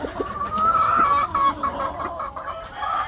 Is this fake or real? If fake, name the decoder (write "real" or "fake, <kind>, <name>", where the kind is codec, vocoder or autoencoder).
fake, vocoder, BigVGAN v2